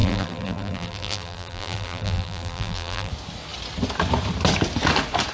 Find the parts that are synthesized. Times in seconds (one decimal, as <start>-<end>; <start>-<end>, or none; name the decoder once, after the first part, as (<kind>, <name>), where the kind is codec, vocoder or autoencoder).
0.0-3.1 (vocoder, BigVGAN v2)